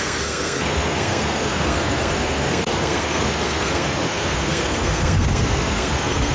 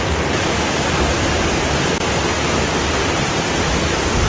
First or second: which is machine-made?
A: first